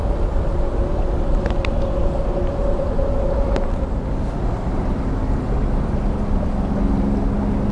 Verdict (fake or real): real